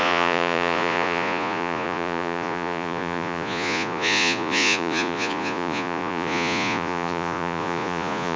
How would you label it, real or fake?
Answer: fake